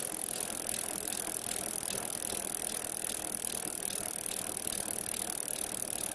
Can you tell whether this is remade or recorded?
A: recorded